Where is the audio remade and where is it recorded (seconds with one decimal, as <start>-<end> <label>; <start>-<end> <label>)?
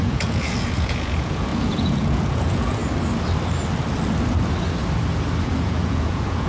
0.0-2.8 remade; 2.8-5.4 recorded; 5.4-6.5 remade